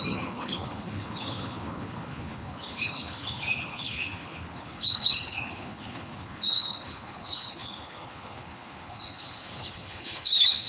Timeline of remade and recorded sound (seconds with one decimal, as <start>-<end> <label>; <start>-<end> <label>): 0.0-10.7 remade

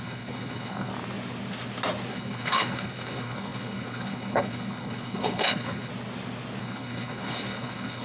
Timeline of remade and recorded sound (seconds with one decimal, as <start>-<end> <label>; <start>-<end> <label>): 0.0-0.9 remade; 0.9-2.1 recorded; 2.1-5.9 remade; 5.9-6.6 recorded; 6.6-8.0 remade

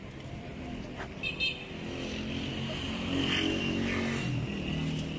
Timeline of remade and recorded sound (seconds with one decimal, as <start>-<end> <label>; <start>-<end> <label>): 0.0-5.2 recorded

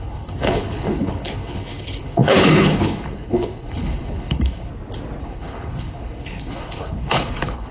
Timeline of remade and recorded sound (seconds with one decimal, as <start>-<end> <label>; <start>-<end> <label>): 0.0-4.7 remade; 4.7-5.2 recorded; 5.2-7.7 remade

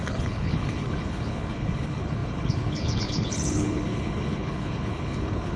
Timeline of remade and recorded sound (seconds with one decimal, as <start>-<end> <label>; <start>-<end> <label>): 0.0-5.6 remade